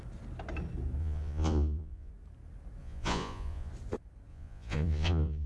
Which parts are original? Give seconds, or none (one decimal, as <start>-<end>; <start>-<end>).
0.0-1.0; 2.1-2.8; 3.7-4.3